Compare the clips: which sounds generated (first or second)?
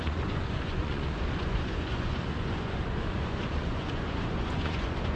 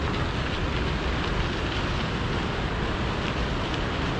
first